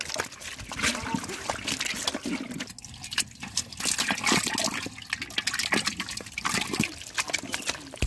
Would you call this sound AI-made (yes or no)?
no